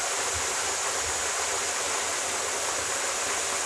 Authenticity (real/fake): real